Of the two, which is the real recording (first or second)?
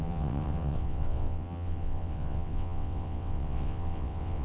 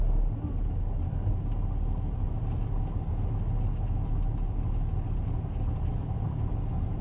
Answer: second